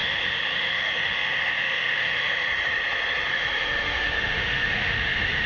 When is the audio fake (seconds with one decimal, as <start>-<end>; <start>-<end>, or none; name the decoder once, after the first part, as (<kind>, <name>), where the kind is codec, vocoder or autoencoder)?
0.0-2.5 (autoencoder, DAC-VAE); 3.3-5.5